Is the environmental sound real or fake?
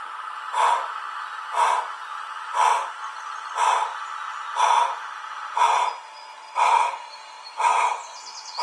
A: real